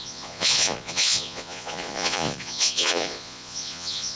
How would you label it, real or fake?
fake